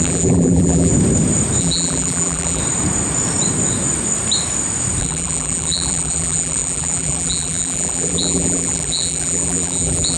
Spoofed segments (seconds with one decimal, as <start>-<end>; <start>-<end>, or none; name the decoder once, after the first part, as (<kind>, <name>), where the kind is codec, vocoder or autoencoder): 0.0-0.9 (vocoder, BigVGAN v2); 1.6-2.6; 5.0-10.2